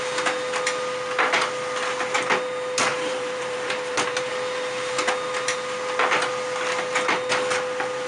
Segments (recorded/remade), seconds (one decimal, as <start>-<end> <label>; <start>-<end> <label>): 0.0-2.9 recorded; 2.9-4.3 remade; 4.3-8.1 recorded